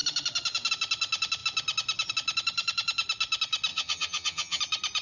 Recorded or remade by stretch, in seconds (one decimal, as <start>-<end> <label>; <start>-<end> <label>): 0.0-3.7 recorded; 3.7-4.6 remade; 4.6-5.0 recorded